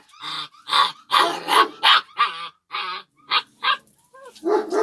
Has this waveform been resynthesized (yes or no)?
no